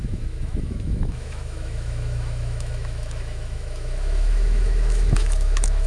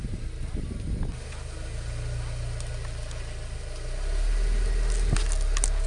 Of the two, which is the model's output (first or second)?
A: first